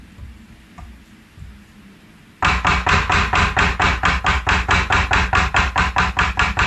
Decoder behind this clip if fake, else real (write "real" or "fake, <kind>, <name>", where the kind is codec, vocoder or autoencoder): real